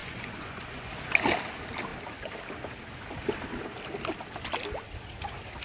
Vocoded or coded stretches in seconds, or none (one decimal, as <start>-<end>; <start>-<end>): 0.0-0.9